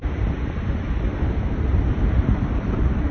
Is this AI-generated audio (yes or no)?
yes